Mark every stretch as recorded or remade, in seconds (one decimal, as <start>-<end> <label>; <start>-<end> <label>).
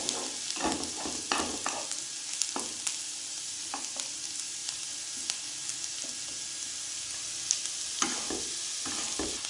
0.0-9.5 recorded